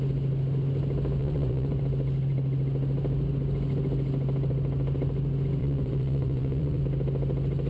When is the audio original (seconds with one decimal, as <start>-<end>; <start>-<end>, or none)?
0.0-1.2; 1.8-5.6; 6.8-7.7